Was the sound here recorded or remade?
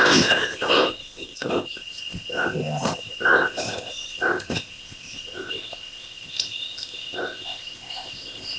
remade